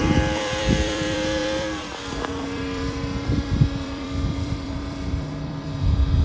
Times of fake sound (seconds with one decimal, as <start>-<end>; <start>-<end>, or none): 0.0-6.2